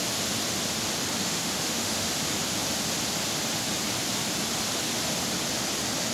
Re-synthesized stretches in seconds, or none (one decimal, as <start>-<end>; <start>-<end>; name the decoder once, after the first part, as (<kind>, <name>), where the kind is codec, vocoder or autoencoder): 1.2-2.1 (autoencoder, DAC-VAE)